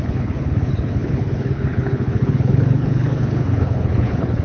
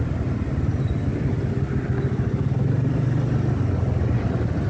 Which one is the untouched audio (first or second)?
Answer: second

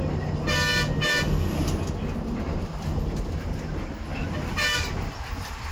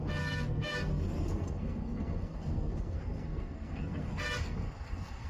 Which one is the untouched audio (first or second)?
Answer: first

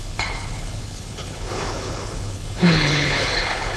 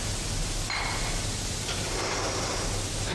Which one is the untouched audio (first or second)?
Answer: second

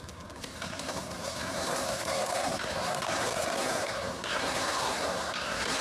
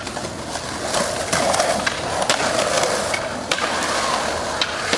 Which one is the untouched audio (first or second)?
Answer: second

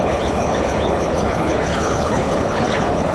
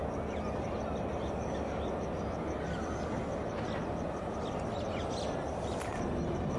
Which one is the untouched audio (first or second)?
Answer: second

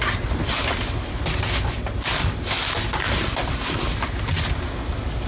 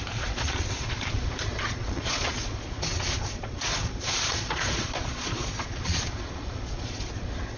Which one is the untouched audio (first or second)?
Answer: first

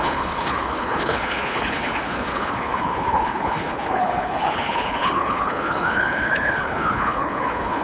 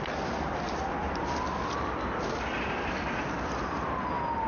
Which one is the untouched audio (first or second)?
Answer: second